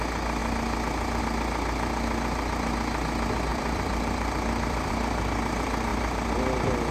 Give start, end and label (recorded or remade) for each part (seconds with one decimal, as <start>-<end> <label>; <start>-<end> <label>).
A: 0.0-3.5 recorded; 3.5-4.9 remade; 4.9-6.9 recorded